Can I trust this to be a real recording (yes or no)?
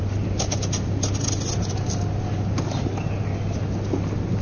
yes